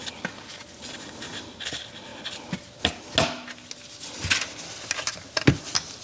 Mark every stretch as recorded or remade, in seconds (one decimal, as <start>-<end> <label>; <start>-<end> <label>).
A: 0.0-6.0 recorded